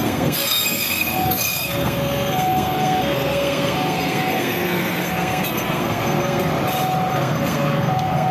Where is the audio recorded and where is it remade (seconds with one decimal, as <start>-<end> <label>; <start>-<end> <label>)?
0.0-6.5 remade; 6.5-7.1 recorded; 7.1-8.3 remade